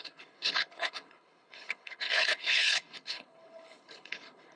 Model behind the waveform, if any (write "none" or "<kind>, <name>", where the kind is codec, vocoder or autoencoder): codec, HILCodec